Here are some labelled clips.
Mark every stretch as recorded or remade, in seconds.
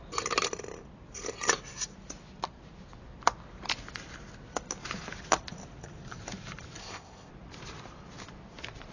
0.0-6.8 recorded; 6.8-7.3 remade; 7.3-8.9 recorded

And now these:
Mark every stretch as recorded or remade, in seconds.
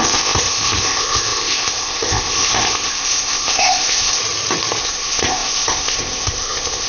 0.0-4.2 remade; 4.2-4.8 recorded; 4.8-6.9 remade